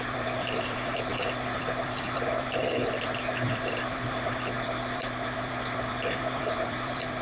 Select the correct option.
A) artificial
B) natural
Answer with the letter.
A